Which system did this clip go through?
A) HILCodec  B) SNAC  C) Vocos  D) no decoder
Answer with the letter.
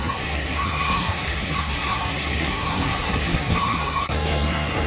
B